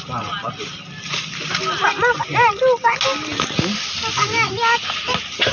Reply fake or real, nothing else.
real